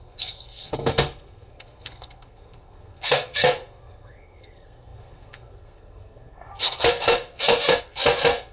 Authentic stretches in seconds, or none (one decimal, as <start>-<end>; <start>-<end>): none